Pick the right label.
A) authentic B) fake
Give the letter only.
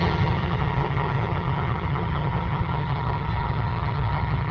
B